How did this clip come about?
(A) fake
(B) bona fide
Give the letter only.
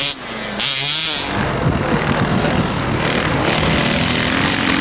B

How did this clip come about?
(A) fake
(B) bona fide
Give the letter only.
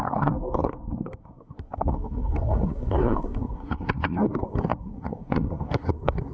A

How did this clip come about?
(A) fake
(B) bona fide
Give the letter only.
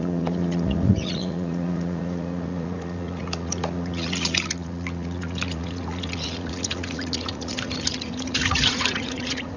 A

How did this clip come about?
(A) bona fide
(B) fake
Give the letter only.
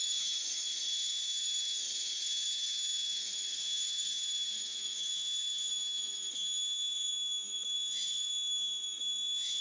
B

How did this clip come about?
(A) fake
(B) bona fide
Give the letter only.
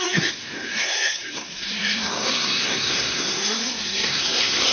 A